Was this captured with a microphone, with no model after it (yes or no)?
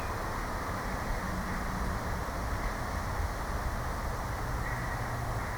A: yes